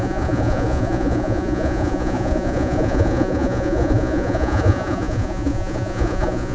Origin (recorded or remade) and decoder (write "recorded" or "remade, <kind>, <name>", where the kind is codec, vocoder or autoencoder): remade, vocoder, Vocos